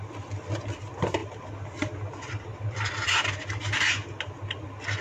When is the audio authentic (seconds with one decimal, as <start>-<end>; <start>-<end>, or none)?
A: 0.0-5.0